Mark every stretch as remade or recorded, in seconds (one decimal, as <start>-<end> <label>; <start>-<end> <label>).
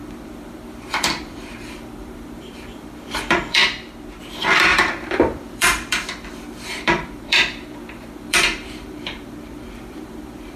0.0-3.6 remade; 3.6-4.2 recorded; 4.2-10.6 remade